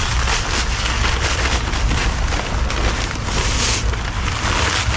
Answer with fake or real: real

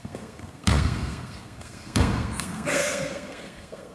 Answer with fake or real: fake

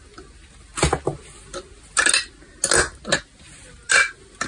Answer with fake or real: real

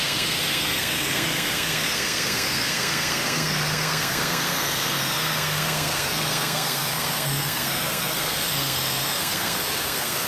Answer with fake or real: fake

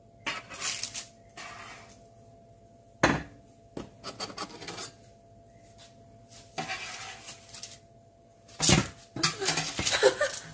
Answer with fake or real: real